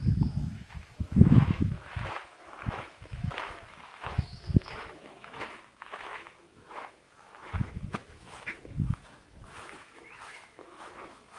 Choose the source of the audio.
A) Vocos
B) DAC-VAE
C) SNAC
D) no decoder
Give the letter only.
B